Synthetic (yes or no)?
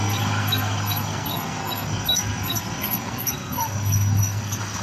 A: yes